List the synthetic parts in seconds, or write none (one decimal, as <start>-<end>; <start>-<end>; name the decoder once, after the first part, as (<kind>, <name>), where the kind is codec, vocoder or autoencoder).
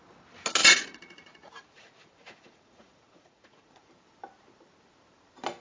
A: 0.6-3.9 (vocoder, Vocos)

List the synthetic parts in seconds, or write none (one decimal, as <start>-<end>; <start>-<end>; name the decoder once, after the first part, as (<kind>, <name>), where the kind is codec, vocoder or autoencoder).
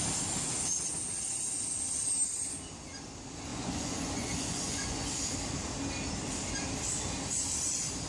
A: 3.5-5.1 (vocoder, Vocos)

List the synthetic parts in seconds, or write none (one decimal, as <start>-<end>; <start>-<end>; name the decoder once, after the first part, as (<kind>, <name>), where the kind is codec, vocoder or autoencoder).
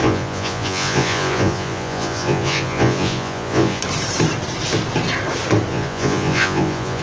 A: 0.0-3.8 (vocoder, Vocos); 5.7-7.0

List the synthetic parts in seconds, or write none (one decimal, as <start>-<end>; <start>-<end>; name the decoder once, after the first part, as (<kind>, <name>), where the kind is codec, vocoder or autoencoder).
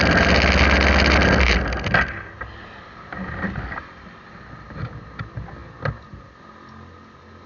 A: none